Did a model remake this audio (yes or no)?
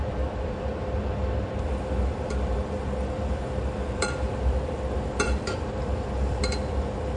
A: yes